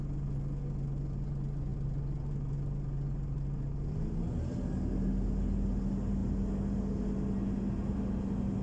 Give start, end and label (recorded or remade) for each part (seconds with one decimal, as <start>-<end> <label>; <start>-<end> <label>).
0.0-8.6 recorded